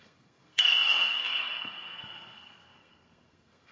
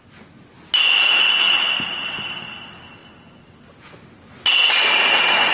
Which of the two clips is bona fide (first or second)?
second